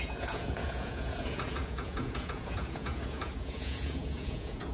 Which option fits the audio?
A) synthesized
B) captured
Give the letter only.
A